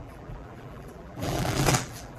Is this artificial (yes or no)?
yes